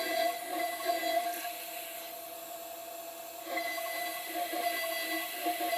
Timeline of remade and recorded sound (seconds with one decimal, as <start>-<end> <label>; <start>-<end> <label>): 0.0-5.8 recorded

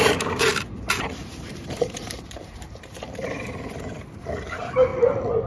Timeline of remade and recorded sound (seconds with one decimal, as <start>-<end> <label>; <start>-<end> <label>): 0.0-4.9 remade; 4.9-5.5 recorded

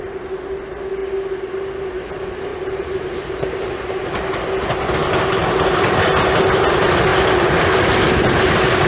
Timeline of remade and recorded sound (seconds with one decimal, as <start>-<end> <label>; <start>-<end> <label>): 0.0-2.5 recorded; 2.5-4.0 remade; 4.0-5.0 recorded; 5.0-5.5 remade; 5.5-8.9 recorded

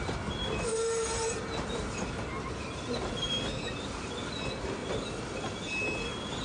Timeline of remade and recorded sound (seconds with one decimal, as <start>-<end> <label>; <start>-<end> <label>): 0.0-0.7 recorded; 0.7-4.1 remade; 4.1-4.8 recorded; 4.8-5.7 remade; 5.7-6.4 recorded

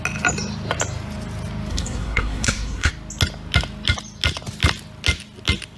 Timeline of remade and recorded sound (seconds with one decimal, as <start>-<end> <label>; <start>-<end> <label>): 0.0-1.7 recorded; 1.7-2.9 remade; 2.9-5.8 recorded

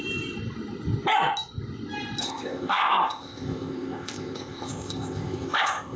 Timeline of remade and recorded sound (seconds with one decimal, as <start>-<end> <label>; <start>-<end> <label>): 0.0-2.2 recorded; 2.2-6.0 remade

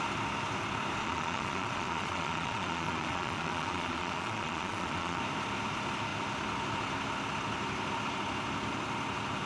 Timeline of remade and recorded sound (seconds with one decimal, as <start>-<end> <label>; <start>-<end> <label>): 0.0-1.0 recorded; 1.0-5.2 remade; 5.2-9.5 recorded

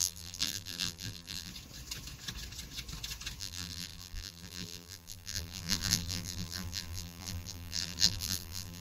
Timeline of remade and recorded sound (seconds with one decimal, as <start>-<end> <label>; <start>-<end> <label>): 0.0-1.5 remade; 1.5-3.4 recorded; 3.4-8.8 remade